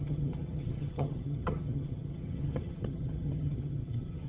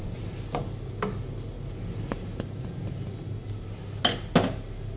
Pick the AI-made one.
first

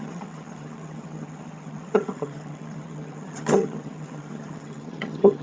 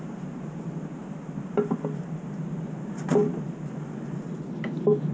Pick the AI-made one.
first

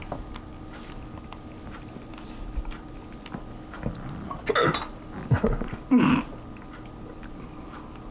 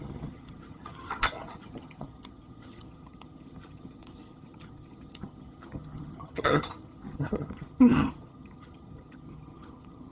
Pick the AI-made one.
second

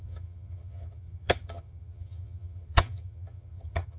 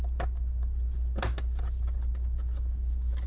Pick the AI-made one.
first